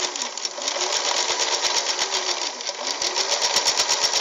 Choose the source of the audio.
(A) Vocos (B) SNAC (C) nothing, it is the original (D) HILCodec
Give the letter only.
C